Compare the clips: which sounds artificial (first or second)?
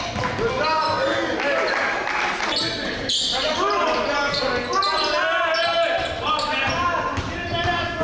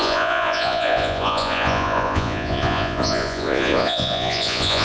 second